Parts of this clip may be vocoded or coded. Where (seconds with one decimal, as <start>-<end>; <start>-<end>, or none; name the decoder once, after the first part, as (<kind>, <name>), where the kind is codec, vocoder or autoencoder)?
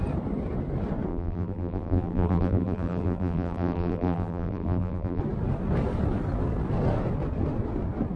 1.1-5.2 (vocoder, BigVGAN v2)